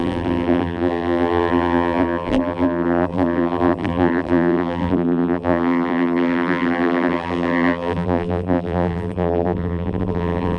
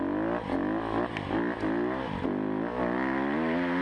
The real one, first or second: second